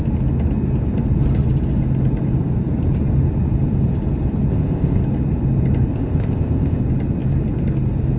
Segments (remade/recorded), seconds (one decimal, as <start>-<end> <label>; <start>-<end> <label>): 0.0-4.5 recorded; 4.5-5.0 remade; 5.0-5.9 recorded; 5.9-6.8 remade; 6.8-8.2 recorded